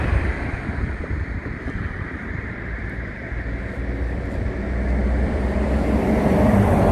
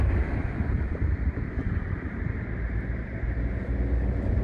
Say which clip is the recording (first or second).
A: second